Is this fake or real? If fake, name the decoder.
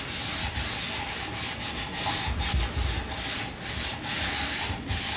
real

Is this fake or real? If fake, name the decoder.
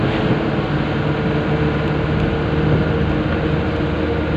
real